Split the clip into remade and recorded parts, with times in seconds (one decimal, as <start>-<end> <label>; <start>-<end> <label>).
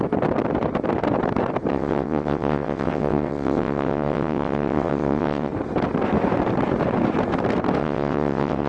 0.0-1.7 recorded; 1.7-5.5 remade; 5.5-7.8 recorded; 7.8-8.7 remade